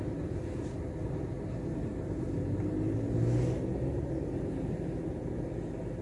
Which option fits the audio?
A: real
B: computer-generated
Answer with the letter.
A